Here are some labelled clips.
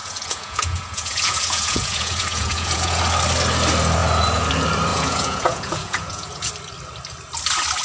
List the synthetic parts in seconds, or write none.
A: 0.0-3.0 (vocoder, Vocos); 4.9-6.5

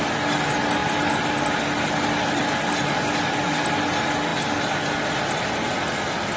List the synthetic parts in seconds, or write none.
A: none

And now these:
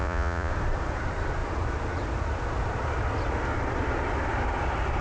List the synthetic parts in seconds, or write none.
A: 0.0-0.5 (vocoder, Vocos)

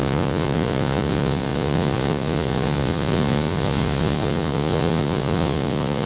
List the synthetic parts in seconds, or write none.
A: 0.0-6.1 (vocoder, Vocos)

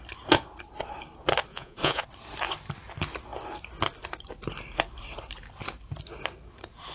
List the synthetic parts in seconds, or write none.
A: 1.5-2.0 (vocoder, Vocos)

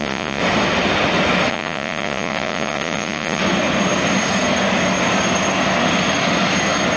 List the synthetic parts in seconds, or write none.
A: 0.0-0.4 (vocoder, Vocos); 1.5-3.4

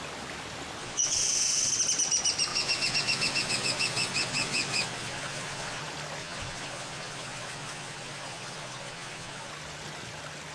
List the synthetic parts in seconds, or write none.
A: 0.8-1.7 (vocoder, Vocos); 2.5-5.8; 6.2-9.5

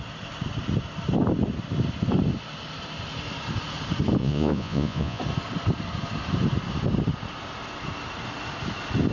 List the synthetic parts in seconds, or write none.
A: 4.2-5.2 (vocoder, Vocos)